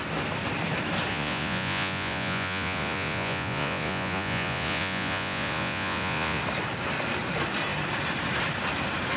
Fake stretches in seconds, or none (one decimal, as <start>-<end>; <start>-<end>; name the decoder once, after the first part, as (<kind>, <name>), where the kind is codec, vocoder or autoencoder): 1.1-6.4 (vocoder, Vocos)